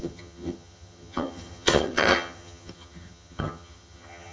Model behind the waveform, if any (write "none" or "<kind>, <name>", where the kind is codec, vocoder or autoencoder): vocoder, HiFi-GAN